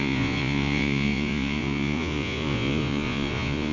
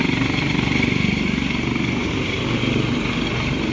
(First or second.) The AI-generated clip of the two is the first